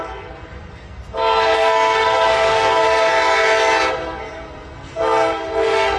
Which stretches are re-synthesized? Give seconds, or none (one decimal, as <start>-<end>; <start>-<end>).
0.0-3.1; 3.9-6.0